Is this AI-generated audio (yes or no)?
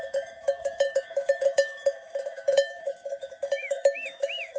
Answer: yes